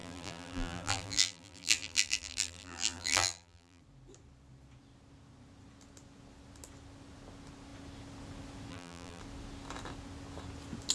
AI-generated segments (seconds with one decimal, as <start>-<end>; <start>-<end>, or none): 0.0-3.8; 8.7-9.2